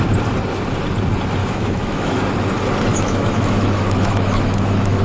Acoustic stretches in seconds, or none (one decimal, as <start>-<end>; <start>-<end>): 0.0-1.4; 2.2-2.9